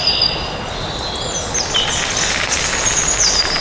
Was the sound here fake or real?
real